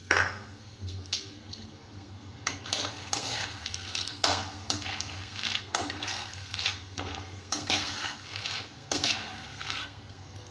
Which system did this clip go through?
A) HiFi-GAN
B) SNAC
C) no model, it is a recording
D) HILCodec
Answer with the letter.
B